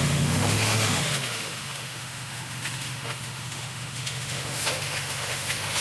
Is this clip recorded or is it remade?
remade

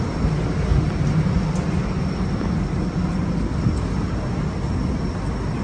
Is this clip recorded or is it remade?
recorded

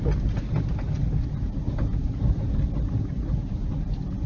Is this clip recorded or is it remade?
recorded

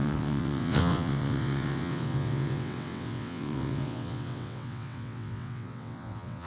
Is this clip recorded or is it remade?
remade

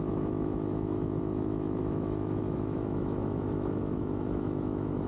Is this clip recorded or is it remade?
remade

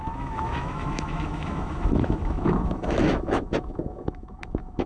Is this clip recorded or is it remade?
remade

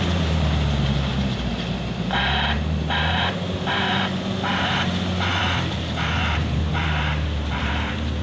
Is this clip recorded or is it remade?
remade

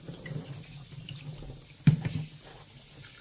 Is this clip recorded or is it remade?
recorded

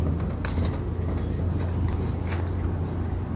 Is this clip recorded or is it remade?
recorded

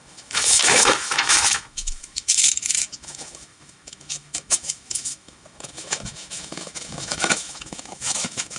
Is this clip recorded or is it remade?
remade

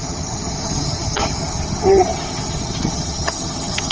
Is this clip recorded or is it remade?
remade